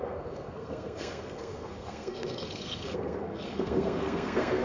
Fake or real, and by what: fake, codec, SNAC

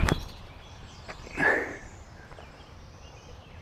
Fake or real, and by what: fake, vocoder, BigVGAN v2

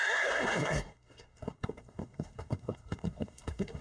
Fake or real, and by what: fake, codec, SNAC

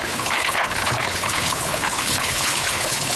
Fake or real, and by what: fake, codec, HILCodec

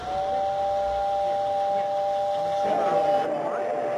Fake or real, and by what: real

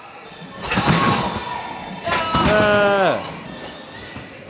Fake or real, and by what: real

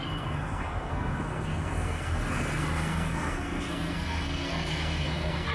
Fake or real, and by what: fake, codec, SNAC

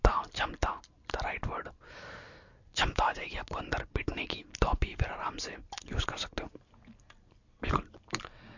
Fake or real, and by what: real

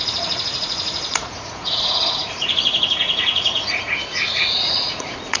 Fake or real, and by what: fake, vocoder, Vocos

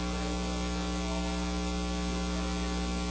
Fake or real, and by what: real